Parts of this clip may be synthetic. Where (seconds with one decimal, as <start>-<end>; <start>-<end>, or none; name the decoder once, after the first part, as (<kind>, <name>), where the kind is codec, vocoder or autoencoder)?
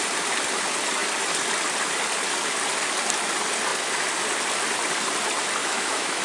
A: 5.6-6.2 (autoencoder, DAC-VAE)